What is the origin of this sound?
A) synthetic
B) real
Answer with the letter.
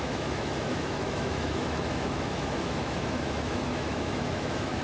A